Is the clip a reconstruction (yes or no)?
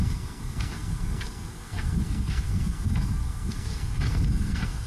yes